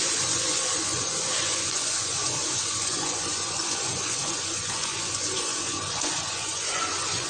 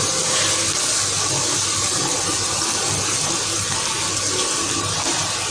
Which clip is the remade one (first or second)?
first